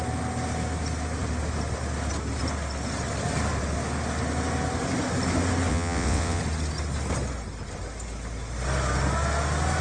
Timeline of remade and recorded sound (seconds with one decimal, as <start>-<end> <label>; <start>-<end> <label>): 0.0-5.7 recorded; 5.7-6.4 remade; 6.4-9.8 recorded